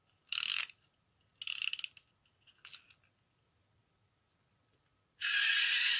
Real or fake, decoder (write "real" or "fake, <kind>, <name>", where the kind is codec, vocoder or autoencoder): real